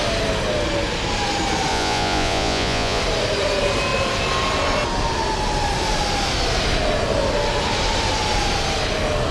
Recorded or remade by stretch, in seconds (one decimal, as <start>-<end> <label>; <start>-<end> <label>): 0.0-1.7 recorded; 1.7-3.0 remade; 3.0-9.3 recorded